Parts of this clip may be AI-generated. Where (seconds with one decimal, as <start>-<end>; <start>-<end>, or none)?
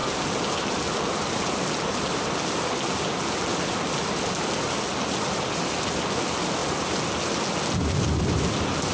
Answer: none